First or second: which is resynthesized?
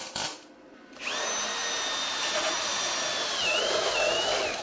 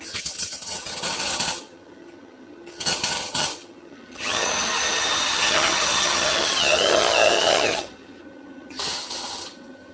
second